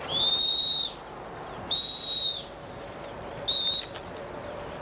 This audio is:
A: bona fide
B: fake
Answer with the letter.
A